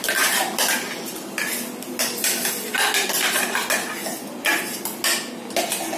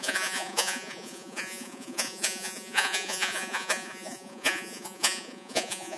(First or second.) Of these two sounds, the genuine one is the first